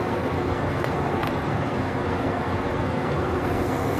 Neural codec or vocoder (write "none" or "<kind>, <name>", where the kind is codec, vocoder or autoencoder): codec, SNAC